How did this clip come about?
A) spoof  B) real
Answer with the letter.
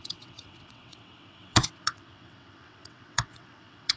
A